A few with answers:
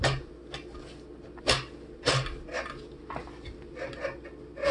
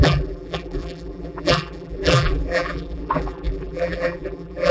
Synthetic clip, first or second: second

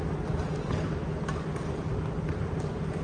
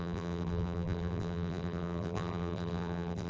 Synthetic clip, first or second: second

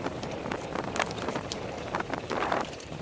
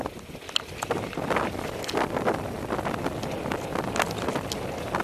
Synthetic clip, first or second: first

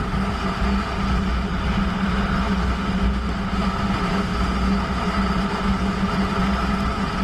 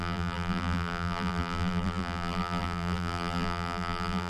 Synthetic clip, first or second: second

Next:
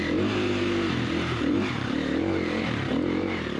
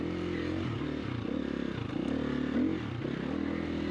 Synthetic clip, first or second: first